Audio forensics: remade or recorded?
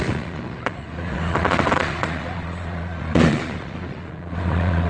remade